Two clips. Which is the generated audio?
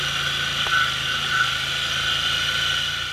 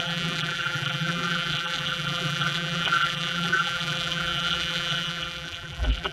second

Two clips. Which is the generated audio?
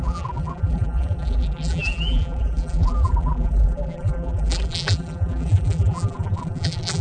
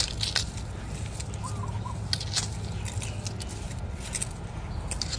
first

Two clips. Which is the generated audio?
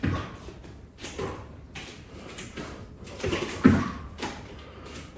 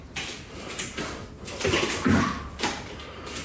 first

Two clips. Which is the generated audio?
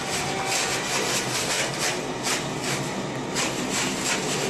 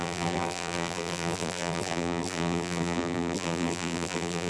second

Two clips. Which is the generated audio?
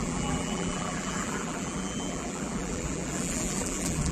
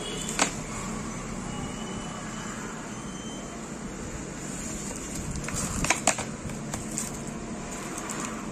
first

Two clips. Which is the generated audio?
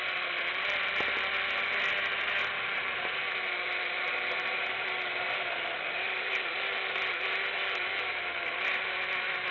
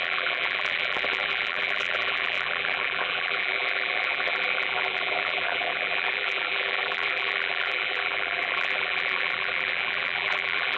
second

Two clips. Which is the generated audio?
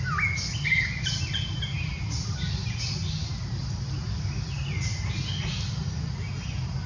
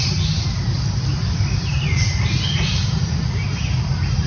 second